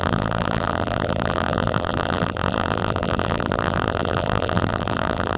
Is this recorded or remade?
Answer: remade